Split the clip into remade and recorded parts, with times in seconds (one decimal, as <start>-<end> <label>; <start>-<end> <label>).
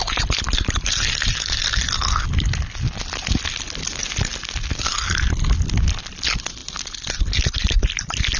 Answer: 0.0-8.4 recorded